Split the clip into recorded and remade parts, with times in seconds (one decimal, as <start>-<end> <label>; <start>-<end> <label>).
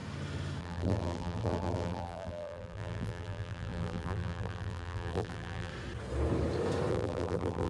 0.0-0.6 recorded; 0.6-5.7 remade; 5.7-6.9 recorded; 6.9-7.7 remade